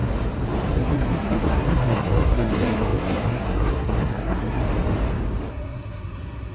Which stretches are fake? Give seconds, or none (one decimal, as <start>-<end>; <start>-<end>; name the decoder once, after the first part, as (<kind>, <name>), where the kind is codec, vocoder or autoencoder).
0.7-4.6 (codec, SNAC); 5.5-6.5